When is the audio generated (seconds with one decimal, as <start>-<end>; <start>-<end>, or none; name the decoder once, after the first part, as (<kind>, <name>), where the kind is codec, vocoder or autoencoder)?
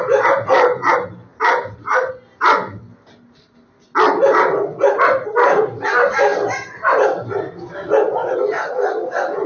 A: 1.3-2.1 (vocoder, BigVGAN v2)